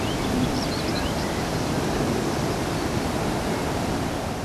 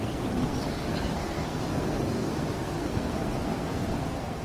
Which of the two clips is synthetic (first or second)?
second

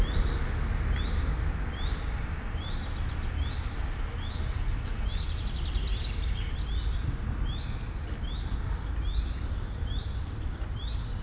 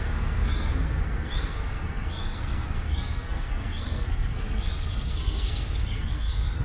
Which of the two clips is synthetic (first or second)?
second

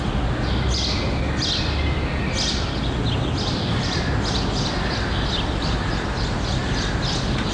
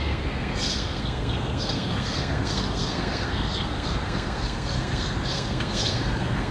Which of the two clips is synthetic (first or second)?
second